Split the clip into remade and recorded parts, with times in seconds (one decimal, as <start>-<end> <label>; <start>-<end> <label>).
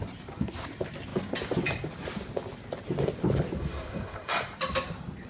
0.0-3.6 recorded; 3.6-4.3 remade; 4.3-5.3 recorded